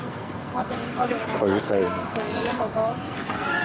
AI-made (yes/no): yes